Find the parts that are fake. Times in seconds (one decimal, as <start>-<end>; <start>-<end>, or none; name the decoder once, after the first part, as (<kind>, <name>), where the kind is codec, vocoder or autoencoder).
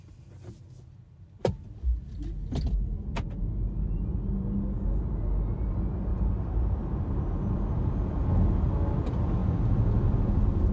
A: 6.1-7.2 (vocoder, BigVGAN v2)